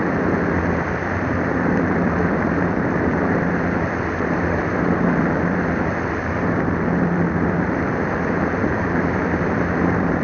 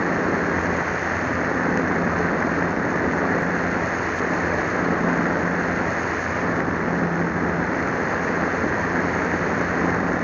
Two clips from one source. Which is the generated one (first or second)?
first